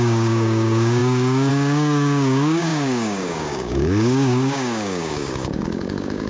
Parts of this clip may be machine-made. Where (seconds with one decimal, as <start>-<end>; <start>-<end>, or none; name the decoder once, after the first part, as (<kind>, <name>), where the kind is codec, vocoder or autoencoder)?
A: 0.0-6.3 (codec, DAC)